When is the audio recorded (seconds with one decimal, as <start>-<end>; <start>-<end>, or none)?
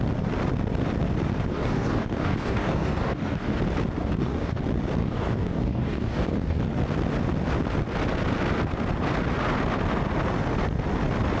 0.0-1.5; 3.6-4.0; 4.6-5.0; 6.6-11.4